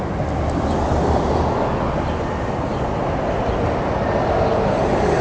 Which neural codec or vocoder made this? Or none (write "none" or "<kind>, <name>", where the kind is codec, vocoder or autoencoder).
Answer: none